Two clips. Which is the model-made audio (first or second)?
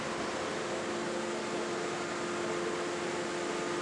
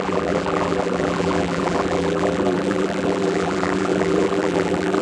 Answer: second